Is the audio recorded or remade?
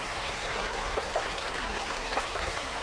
remade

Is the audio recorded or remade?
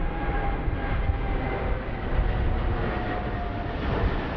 recorded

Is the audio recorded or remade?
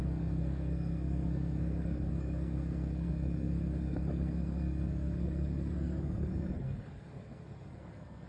remade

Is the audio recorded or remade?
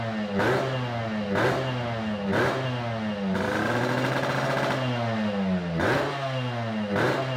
recorded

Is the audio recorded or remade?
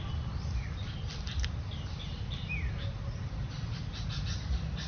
recorded